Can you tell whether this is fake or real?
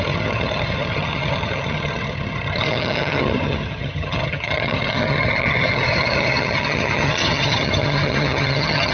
fake